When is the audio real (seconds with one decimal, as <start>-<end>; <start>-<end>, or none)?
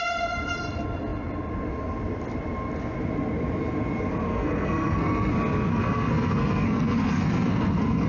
0.0-4.3; 5.3-5.7